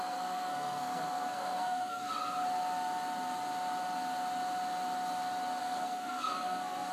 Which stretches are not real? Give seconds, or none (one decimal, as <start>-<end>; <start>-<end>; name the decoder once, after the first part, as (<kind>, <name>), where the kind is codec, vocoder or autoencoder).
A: 0.0-2.1 (codec, SNAC); 5.6-6.9